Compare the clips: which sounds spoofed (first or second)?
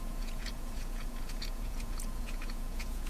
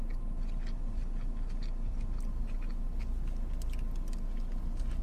first